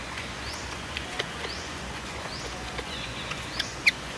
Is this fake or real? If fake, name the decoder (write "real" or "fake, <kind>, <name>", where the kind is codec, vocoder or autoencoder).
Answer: fake, vocoder, Vocos